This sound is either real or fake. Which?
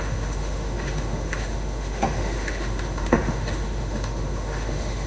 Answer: fake